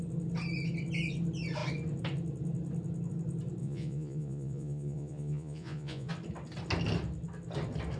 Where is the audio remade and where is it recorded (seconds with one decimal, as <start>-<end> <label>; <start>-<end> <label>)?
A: 0.0-3.6 recorded; 3.6-6.1 remade; 6.1-8.0 recorded

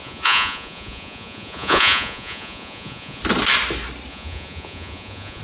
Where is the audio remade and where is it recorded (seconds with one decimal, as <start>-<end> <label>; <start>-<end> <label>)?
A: 0.0-3.2 remade; 3.2-4.1 recorded; 4.1-5.4 remade